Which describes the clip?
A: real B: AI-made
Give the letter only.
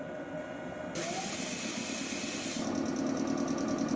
A